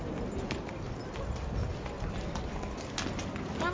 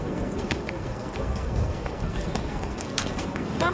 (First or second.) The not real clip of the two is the second